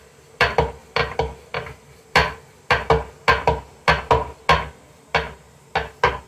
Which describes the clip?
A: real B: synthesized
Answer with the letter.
A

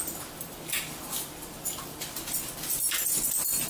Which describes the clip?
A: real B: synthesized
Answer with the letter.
A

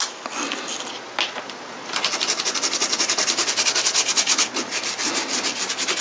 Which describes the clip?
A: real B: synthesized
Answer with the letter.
A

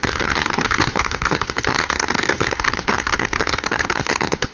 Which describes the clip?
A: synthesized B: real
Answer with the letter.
A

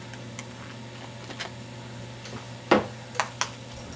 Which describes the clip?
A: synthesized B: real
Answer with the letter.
B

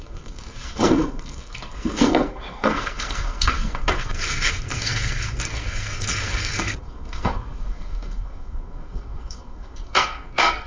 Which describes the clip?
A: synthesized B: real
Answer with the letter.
A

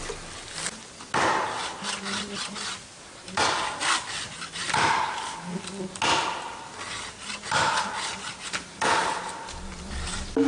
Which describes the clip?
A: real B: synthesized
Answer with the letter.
A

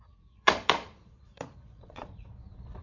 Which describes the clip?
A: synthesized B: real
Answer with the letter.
A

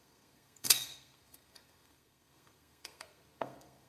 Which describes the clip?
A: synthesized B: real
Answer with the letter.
A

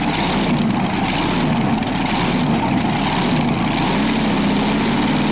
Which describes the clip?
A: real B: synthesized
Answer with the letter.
A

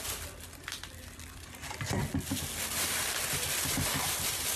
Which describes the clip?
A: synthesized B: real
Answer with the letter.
B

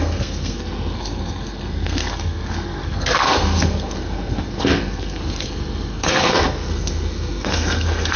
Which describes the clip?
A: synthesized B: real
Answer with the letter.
A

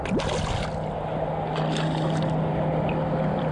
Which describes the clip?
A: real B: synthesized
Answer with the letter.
A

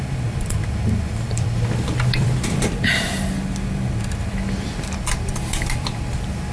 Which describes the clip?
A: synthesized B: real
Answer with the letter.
A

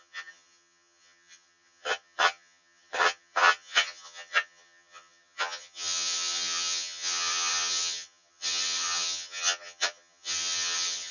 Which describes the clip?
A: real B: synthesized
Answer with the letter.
B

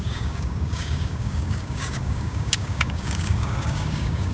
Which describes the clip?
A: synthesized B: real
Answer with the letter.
A